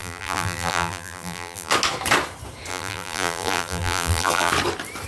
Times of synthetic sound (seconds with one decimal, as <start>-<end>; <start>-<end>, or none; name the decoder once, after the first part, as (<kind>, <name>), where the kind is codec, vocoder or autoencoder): 0.0-1.7 (vocoder, BigVGAN v2); 2.7-4.5